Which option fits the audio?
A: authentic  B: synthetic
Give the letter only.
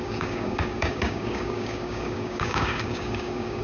B